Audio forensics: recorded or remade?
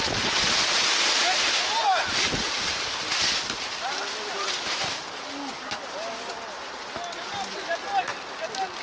recorded